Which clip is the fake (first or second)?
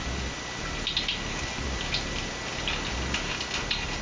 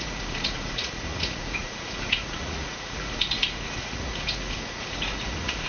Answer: second